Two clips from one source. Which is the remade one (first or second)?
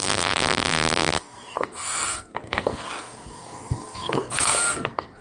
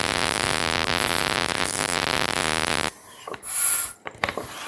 first